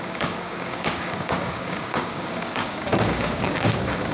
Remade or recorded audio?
remade